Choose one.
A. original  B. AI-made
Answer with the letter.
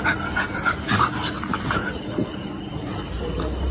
A